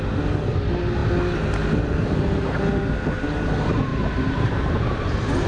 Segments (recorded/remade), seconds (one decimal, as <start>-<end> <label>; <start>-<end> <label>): 0.0-3.9 recorded; 3.9-5.1 remade; 5.1-5.5 recorded